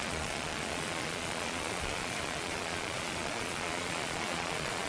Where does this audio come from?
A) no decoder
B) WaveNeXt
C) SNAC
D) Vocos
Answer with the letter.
D